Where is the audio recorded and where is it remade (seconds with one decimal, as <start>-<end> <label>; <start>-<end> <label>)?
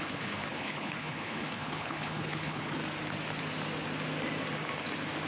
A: 0.0-2.8 remade; 2.8-5.3 recorded